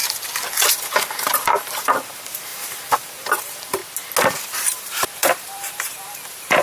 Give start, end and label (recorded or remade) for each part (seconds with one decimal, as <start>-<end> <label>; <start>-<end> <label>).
0.0-0.7 recorded; 0.7-3.8 remade; 3.8-4.5 recorded; 4.5-6.6 remade

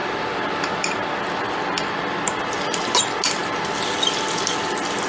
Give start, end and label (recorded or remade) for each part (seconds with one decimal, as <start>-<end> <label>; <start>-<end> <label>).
0.0-5.1 recorded

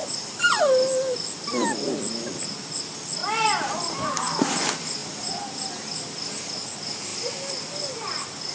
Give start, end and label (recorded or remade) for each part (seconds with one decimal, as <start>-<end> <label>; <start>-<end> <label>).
0.0-0.6 remade; 0.6-3.2 recorded; 3.2-4.6 remade; 4.6-5.0 recorded; 5.0-5.7 remade; 5.7-7.1 recorded; 7.1-7.7 remade; 7.7-8.5 recorded

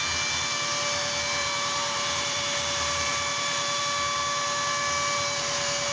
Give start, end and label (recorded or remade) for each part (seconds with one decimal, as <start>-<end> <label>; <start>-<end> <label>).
0.0-1.4 recorded; 1.4-3.8 remade; 3.8-5.9 recorded

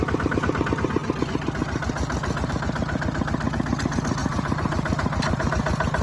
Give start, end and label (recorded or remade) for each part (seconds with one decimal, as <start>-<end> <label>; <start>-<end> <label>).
0.0-4.2 recorded; 4.2-5.5 remade; 5.5-6.0 recorded

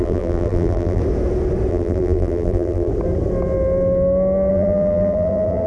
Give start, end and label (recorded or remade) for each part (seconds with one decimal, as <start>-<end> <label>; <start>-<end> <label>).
0.0-1.0 remade; 1.0-1.7 recorded; 1.7-2.9 remade; 2.9-4.5 recorded; 4.5-5.7 remade

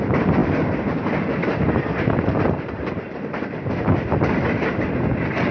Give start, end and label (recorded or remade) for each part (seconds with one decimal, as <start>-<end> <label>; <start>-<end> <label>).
0.0-0.4 recorded; 0.4-3.7 remade; 3.7-5.5 recorded

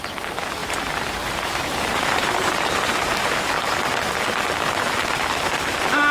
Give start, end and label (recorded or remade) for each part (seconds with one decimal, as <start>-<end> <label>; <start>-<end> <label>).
0.0-0.6 recorded; 0.6-3.7 remade; 3.7-6.1 recorded